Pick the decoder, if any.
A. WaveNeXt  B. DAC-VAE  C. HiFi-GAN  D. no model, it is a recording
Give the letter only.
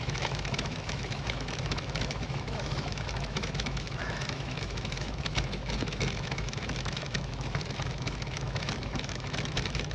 B